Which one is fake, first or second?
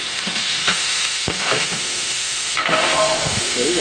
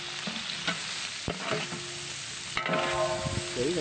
first